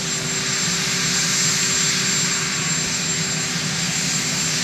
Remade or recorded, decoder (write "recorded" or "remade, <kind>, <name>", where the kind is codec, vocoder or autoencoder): recorded